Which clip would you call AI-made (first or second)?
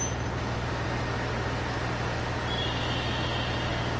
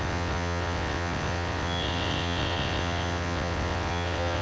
second